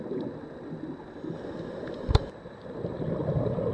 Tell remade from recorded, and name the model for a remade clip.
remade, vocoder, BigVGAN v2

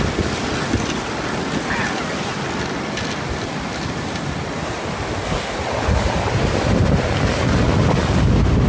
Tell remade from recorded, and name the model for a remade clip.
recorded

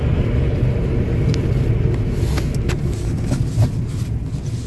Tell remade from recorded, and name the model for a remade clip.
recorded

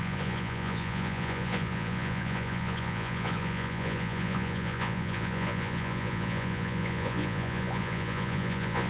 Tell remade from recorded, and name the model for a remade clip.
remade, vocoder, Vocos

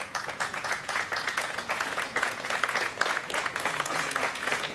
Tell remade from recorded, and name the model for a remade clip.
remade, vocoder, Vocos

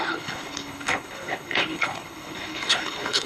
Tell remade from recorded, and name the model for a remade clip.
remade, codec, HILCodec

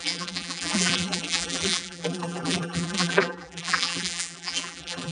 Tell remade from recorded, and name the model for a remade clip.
remade, vocoder, BigVGAN v2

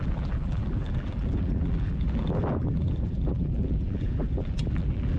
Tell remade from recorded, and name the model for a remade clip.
remade, vocoder, BigVGAN v2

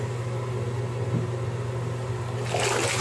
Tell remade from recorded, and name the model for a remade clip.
recorded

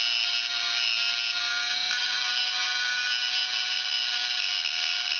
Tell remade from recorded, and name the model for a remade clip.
recorded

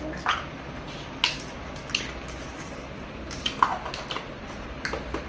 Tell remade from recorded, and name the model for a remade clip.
recorded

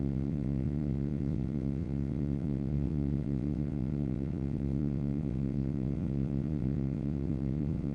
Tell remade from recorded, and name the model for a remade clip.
remade, vocoder, WaveNeXt